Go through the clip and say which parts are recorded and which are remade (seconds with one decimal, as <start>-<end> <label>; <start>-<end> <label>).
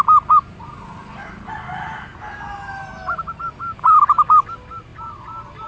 0.0-5.7 recorded